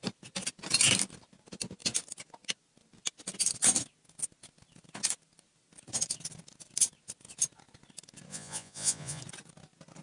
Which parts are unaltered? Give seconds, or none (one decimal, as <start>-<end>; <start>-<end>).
0.0-8.3; 9.2-10.0

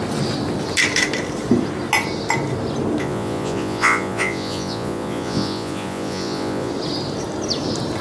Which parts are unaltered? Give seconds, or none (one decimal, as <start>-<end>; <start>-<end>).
0.0-3.0; 6.7-8.0

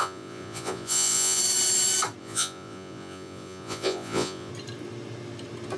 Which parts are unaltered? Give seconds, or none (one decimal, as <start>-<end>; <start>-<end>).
1.4-2.2; 4.5-5.8

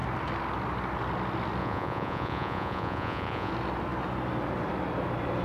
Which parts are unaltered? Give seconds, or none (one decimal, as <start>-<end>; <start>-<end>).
0.0-1.6; 3.5-5.4